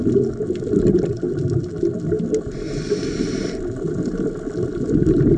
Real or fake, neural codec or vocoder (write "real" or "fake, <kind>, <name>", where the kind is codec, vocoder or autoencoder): real